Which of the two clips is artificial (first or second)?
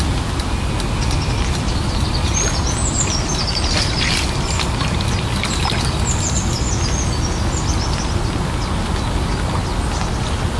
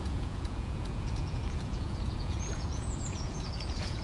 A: second